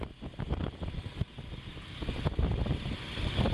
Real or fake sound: real